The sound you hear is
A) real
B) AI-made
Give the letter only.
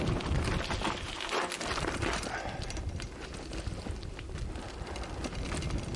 A